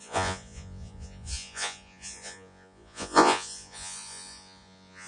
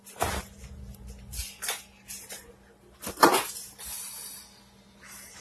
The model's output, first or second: first